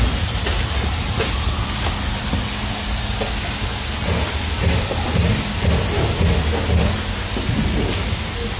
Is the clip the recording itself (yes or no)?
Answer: yes